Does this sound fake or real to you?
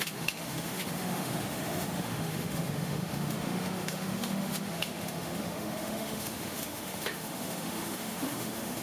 fake